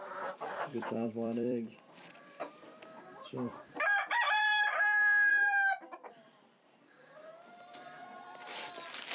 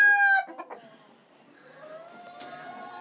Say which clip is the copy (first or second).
first